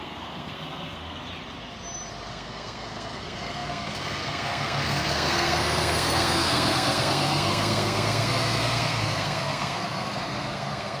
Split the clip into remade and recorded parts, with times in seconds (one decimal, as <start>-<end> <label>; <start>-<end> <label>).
0.0-1.2 remade; 1.2-2.3 recorded; 2.3-11.0 remade